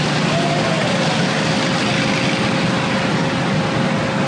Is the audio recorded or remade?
recorded